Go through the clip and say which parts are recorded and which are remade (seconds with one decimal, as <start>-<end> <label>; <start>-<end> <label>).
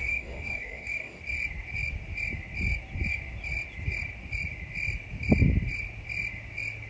0.0-1.2 remade; 1.2-6.9 recorded